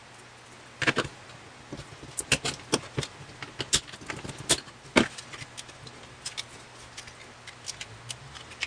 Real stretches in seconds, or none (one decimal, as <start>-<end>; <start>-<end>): 0.0-8.7

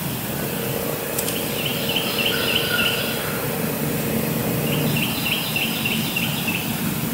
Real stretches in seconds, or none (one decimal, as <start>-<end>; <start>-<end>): 0.0-7.1